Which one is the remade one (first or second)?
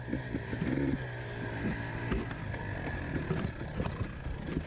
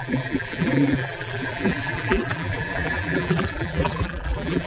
second